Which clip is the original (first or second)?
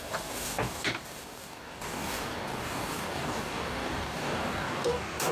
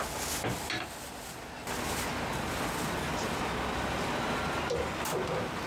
second